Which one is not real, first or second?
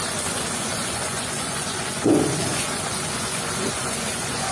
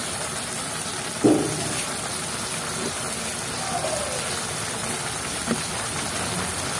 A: first